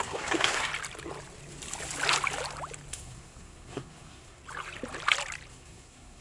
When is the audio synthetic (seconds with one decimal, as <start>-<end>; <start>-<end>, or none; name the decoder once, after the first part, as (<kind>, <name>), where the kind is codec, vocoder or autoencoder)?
0.0-0.7 (codec, SNAC); 2.9-4.4; 5.5-6.2